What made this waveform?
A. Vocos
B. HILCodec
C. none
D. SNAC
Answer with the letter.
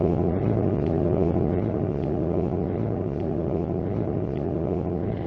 A